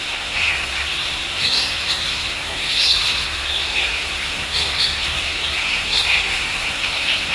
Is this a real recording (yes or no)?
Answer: no